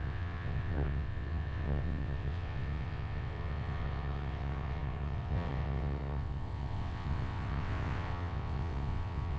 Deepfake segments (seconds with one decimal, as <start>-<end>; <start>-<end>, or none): 0.0-9.4